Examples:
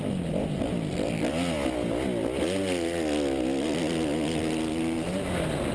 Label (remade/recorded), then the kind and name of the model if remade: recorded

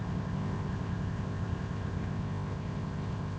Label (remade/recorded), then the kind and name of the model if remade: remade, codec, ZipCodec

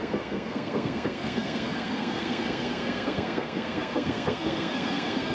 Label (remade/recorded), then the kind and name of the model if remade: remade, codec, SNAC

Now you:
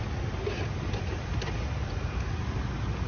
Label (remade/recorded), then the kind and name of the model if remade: recorded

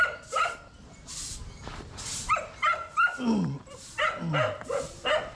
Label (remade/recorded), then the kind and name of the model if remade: recorded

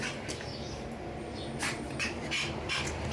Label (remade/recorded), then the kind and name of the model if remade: recorded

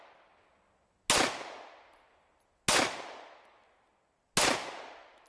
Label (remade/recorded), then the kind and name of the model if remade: recorded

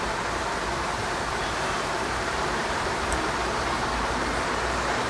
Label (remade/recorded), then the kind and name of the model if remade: remade, vocoder, BigVGAN v2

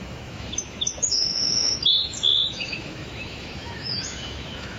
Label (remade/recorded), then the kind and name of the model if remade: remade, autoencoder, DAC-VAE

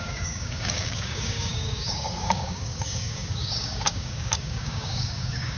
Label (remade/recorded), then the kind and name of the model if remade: remade, codec, DAC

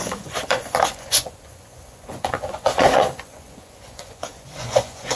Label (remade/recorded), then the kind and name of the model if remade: remade, vocoder, Vocos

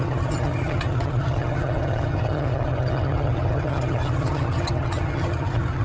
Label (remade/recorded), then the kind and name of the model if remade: remade, vocoder, HiFi-GAN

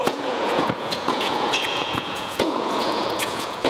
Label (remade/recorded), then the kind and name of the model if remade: remade, vocoder, Vocos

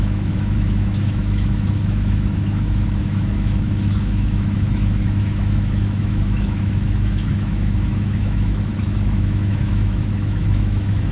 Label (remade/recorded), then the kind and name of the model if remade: remade, autoencoder, DAC-VAE